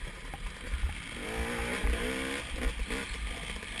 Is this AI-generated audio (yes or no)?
no